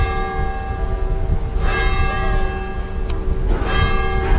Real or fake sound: real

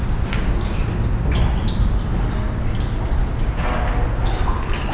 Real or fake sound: real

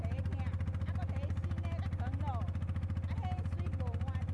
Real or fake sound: real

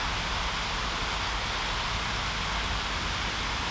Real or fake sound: real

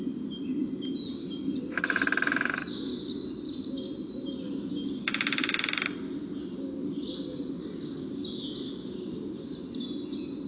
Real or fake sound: real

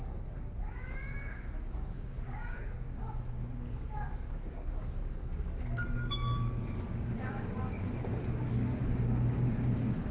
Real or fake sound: fake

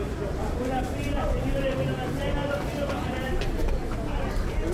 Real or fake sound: real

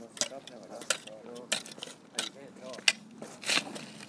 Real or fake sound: real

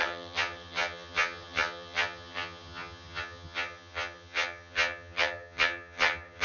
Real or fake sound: fake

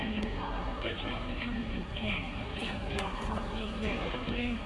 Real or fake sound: fake